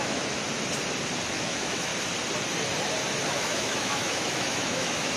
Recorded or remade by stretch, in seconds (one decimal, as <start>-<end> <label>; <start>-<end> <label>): 0.0-0.4 remade; 0.4-1.3 recorded; 1.3-1.9 remade; 1.9-3.2 recorded; 3.2-5.2 remade